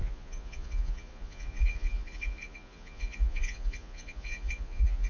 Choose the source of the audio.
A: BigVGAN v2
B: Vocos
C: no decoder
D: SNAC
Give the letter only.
B